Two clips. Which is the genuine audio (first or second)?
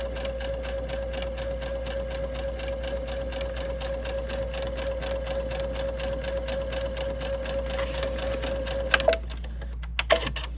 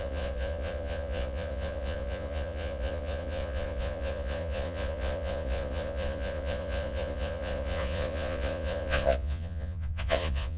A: first